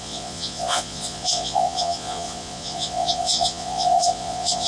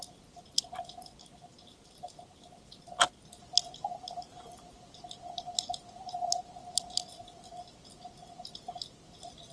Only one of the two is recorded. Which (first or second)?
second